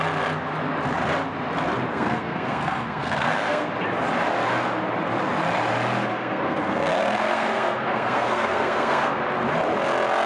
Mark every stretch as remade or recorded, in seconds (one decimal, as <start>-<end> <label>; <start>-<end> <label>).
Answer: 0.0-1.9 recorded; 1.9-3.7 remade; 3.7-6.1 recorded; 6.1-9.2 remade; 9.2-10.3 recorded